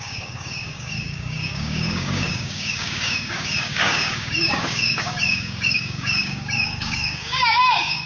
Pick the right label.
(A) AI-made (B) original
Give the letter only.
A